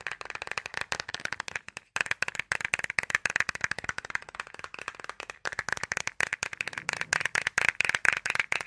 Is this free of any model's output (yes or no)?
yes